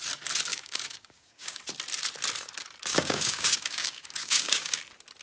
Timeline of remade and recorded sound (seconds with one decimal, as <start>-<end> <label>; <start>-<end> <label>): 0.0-0.5 recorded; 0.5-1.6 remade; 1.6-2.9 recorded; 2.9-4.8 remade; 4.8-5.2 recorded